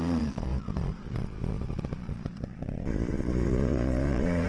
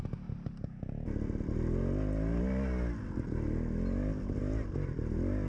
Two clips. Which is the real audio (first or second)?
second